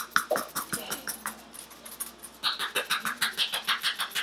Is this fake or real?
real